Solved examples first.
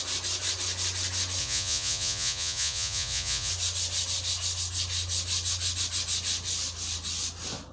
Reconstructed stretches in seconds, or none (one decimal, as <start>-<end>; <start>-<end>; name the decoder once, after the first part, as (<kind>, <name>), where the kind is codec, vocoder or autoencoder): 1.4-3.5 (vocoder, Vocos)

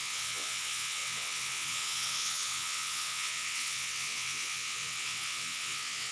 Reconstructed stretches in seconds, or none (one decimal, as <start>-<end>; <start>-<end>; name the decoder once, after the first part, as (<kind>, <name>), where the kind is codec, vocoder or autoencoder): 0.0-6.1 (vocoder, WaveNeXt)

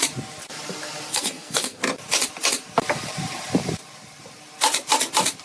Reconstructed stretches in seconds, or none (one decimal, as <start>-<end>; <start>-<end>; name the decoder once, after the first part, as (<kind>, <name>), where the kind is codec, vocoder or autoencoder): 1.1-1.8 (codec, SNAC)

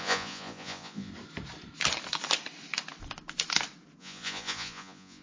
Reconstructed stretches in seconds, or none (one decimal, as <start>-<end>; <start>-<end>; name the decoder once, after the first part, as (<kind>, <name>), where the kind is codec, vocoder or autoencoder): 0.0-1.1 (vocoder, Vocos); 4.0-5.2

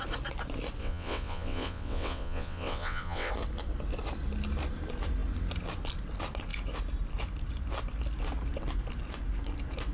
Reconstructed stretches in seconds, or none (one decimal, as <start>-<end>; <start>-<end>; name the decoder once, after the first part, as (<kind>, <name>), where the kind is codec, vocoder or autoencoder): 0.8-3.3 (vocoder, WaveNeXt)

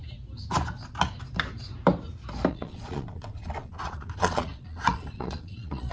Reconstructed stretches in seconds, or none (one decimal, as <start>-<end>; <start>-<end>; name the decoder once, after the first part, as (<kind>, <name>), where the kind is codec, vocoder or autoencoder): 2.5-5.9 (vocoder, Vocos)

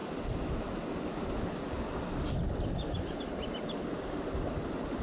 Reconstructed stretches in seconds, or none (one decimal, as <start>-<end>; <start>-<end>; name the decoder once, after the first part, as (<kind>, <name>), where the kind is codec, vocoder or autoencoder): none

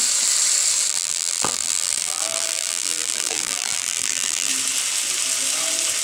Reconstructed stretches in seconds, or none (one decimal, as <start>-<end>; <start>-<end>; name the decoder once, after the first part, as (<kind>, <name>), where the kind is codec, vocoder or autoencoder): 0.9-4.5 (vocoder, BigVGAN v2)